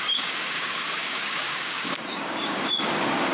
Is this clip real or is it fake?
fake